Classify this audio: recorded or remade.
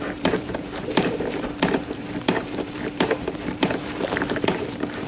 remade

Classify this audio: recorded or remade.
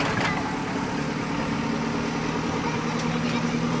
recorded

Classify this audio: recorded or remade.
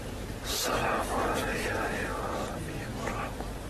recorded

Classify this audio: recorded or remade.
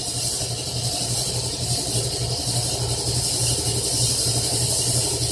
remade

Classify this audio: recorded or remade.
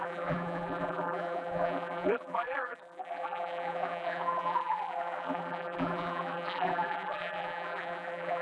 remade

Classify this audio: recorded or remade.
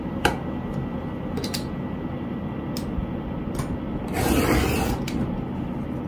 recorded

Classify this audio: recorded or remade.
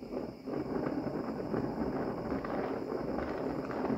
remade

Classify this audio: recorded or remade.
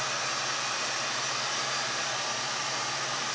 recorded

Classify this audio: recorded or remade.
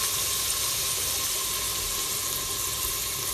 recorded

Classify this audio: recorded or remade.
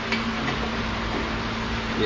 recorded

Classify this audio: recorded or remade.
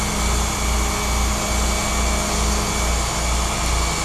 recorded